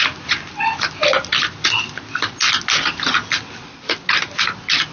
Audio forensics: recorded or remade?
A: recorded